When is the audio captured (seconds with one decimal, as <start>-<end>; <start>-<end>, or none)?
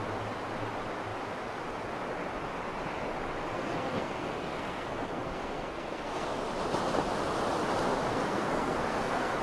0.0-3.5; 6.4-8.1